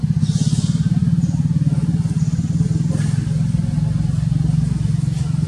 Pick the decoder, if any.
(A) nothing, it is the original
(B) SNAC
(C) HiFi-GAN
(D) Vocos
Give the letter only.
A